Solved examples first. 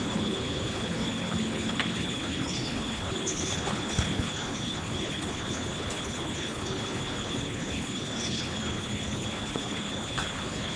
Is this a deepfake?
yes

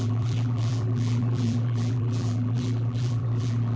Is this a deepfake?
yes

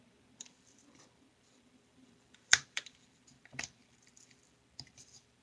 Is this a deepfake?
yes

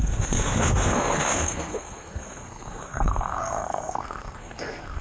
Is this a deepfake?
yes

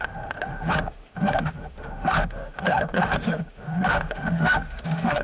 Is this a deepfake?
yes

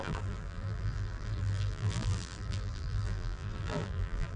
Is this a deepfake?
yes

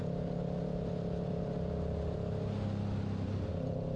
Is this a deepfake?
no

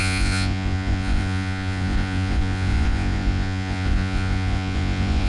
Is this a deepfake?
yes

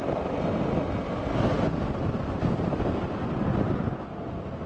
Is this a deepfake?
no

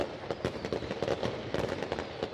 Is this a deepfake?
no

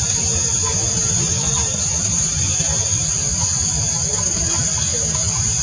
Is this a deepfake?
no